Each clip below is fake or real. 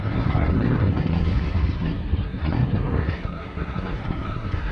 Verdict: fake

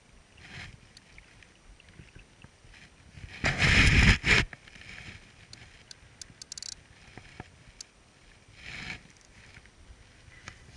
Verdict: real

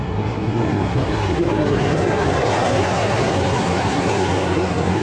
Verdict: fake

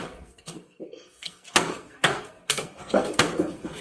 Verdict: fake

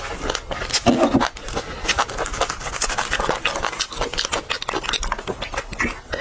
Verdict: real